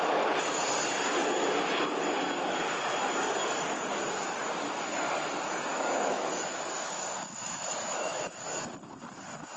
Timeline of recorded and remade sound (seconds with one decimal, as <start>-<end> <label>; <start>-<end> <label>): 0.0-5.7 recorded; 5.7-6.5 remade; 6.5-7.4 recorded; 7.4-8.4 remade; 8.4-9.6 recorded